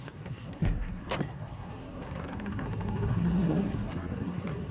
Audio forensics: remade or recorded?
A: remade